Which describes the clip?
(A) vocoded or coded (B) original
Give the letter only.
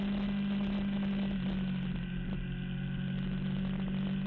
B